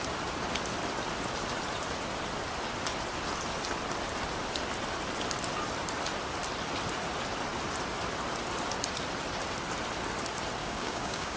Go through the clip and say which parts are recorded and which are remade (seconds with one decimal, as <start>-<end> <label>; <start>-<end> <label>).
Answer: 0.0-10.6 recorded; 10.6-11.4 remade